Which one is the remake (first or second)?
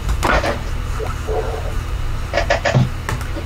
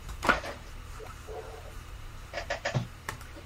second